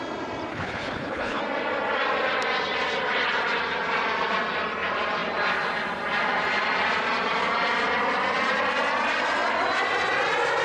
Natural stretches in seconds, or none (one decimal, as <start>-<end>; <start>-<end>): 0.0-0.5; 1.4-10.6